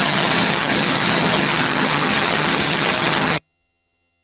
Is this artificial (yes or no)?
yes